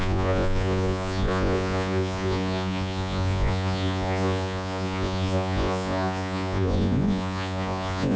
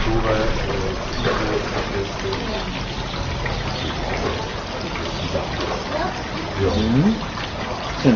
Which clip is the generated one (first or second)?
first